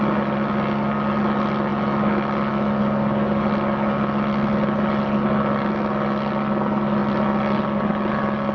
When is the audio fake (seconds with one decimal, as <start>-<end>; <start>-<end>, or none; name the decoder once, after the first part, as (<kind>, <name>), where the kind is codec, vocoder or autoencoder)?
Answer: none